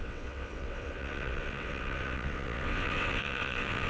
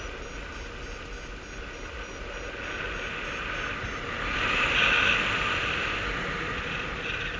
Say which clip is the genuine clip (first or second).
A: second